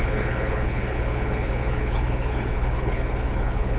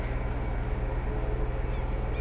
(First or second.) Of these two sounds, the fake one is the first